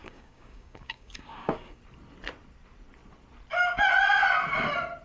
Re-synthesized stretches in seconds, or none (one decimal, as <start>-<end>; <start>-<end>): 0.0-1.8